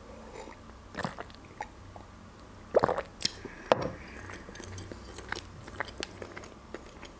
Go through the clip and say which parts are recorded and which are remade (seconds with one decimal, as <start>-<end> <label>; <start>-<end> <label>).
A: 0.0-7.2 recorded